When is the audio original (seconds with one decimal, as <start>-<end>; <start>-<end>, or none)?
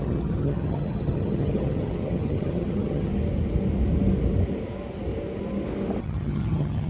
3.1-6.0